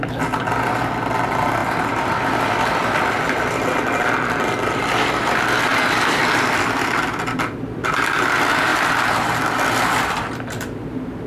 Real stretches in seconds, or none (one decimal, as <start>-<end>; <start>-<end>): 0.0-11.3